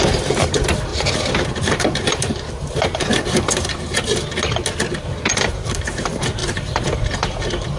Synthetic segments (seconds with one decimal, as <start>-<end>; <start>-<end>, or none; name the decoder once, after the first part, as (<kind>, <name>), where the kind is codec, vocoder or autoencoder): 0.0-3.7 (vocoder, BigVGAN v2); 5.3-7.8

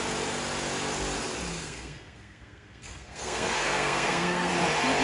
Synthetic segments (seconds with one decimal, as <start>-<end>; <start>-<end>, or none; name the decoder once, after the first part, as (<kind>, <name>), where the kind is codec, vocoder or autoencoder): 1.5-4.5 (codec, SNAC)

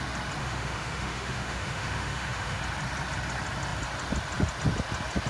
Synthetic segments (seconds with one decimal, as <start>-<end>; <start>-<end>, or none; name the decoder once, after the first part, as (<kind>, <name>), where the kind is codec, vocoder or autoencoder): 0.4-2.6 (autoencoder, DAC-VAE)

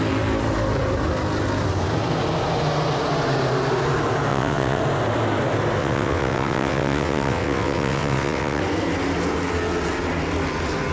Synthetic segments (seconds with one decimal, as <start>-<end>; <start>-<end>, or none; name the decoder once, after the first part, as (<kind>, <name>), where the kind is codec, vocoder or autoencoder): 4.3-4.8 (vocoder, WaveNeXt); 5.8-8.6

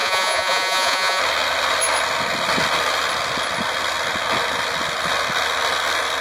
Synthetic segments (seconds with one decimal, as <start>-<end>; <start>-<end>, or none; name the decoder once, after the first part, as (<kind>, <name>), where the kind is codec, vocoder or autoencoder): 0.0-1.2 (vocoder, Vocos)

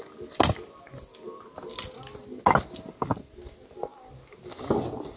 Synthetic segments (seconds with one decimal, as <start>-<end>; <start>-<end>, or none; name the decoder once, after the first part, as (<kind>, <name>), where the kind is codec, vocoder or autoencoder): none